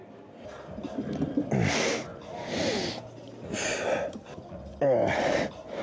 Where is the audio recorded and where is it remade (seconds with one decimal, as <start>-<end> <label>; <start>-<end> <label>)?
0.0-5.8 recorded